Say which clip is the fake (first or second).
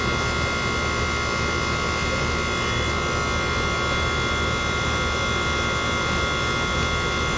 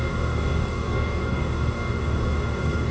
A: second